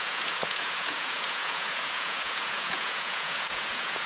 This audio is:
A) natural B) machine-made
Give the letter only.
B